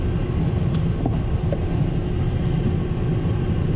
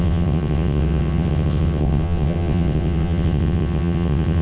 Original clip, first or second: first